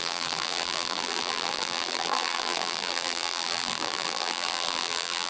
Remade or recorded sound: remade